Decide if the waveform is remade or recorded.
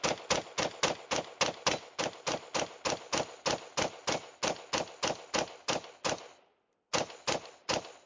recorded